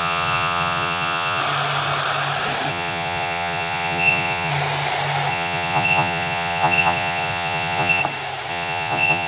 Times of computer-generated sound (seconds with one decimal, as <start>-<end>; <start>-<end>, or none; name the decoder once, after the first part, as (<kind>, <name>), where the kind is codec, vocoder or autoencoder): 0.0-1.4 (vocoder, Vocos); 2.7-4.5; 5.3-8.0; 8.5-9.3